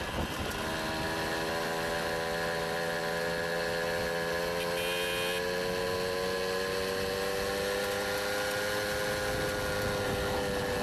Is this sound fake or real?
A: real